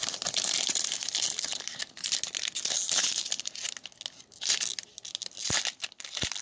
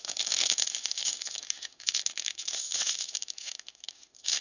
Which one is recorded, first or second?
first